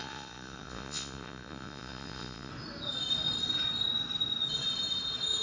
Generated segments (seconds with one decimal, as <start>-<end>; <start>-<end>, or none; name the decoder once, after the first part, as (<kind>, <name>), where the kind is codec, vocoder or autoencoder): 0.0-2.5 (vocoder, Vocos)

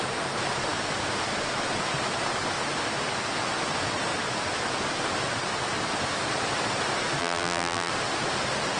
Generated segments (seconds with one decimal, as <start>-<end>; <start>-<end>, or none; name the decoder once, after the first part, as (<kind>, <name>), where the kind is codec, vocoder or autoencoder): 7.2-7.9 (vocoder, BigVGAN v2)

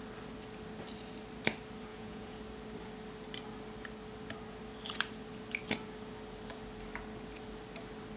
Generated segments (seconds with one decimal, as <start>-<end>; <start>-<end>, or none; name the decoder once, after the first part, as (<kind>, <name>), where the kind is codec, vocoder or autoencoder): 1.9-2.4 (vocoder, Vocos)

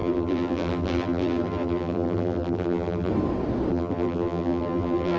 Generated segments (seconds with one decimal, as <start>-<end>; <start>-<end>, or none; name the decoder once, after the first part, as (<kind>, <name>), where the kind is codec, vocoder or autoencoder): 0.0-3.1 (vocoder, BigVGAN v2); 3.7-5.2

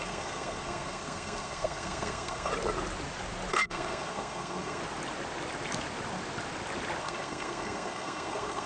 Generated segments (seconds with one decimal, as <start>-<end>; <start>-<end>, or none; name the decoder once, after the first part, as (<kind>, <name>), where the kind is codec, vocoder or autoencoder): 0.0-2.5 (codec, SNAC); 3.5-4.8; 7.0-8.7

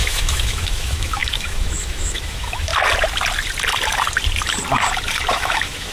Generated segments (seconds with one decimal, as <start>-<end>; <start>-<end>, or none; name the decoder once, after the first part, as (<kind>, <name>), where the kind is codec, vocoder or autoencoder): 0.0-2.7 (autoencoder, DAC-VAE); 5.3-5.9